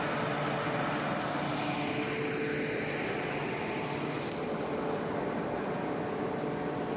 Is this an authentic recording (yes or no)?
yes